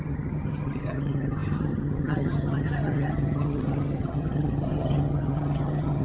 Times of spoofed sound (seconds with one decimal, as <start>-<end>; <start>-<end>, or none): 0.0-6.0

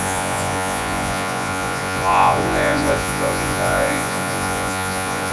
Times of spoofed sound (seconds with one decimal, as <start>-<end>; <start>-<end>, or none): 0.0-5.3

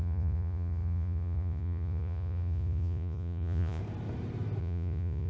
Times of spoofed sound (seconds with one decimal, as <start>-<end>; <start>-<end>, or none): 0.0-3.8; 4.6-5.3